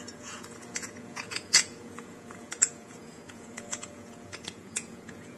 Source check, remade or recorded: remade